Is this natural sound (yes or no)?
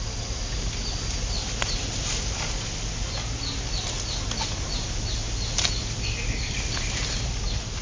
yes